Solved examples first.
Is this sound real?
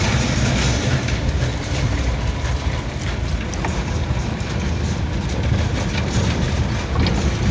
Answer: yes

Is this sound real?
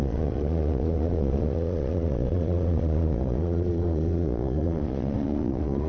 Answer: no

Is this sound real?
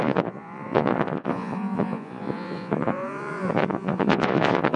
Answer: no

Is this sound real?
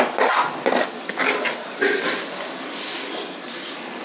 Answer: yes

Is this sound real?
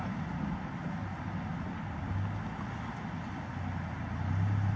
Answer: yes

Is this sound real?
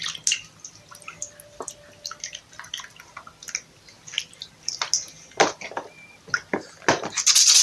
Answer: yes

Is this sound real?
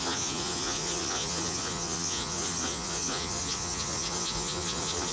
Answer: no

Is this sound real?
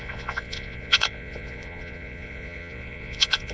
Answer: no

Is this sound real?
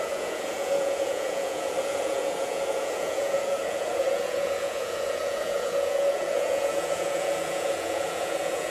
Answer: no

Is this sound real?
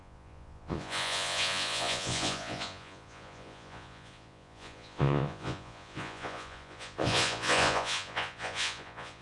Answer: no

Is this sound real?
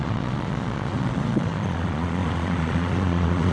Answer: no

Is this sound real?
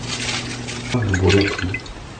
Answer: yes